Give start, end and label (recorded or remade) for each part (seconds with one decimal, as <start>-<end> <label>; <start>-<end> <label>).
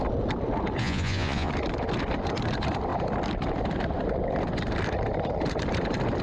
0.0-0.8 recorded; 0.8-1.5 remade; 1.5-6.2 recorded